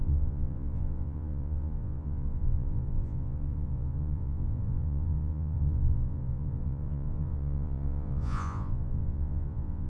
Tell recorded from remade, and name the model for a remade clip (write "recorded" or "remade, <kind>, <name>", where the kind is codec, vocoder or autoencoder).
remade, vocoder, Vocos